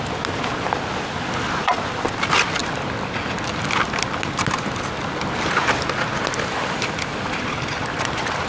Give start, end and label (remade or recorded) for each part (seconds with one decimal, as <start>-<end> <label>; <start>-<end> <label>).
0.0-8.5 recorded